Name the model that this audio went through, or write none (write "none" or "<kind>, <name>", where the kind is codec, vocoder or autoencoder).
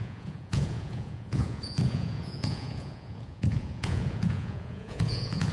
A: vocoder, Vocos